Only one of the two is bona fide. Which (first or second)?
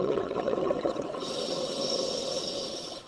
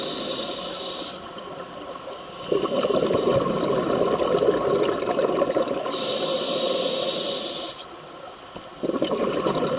second